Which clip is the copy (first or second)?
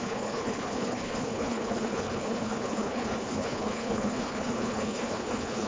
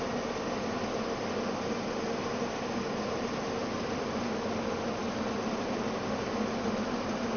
first